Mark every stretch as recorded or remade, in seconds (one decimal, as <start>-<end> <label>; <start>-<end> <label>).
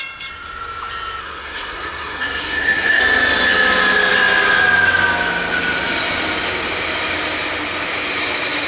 0.0-1.2 recorded; 1.2-3.0 remade; 3.0-8.7 recorded